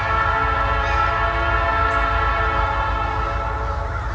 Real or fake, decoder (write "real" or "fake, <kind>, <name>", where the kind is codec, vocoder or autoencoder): real